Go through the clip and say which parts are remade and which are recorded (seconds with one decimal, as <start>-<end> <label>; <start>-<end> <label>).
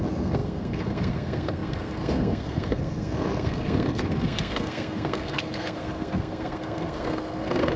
0.0-7.8 remade